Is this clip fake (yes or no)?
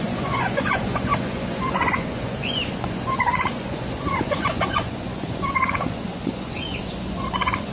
yes